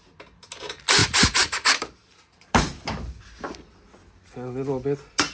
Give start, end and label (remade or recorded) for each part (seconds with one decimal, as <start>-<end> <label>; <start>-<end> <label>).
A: 0.0-1.0 recorded; 1.0-3.2 remade; 3.2-5.3 recorded